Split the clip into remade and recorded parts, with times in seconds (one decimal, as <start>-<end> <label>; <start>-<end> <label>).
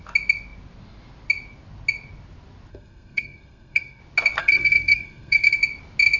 0.0-2.7 recorded; 2.7-4.0 remade; 4.0-4.4 recorded; 4.4-5.6 remade; 5.6-6.2 recorded